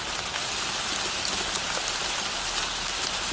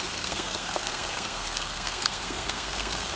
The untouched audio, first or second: first